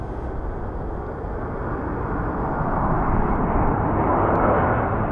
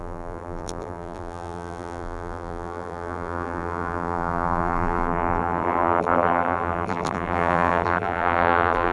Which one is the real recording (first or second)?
first